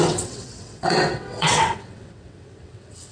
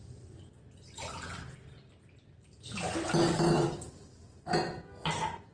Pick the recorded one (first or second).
second